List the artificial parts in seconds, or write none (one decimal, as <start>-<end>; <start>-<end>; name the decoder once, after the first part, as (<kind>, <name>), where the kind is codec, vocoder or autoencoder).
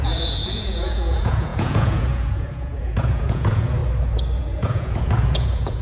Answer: 0.0-3.8 (vocoder, Vocos); 4.4-5.8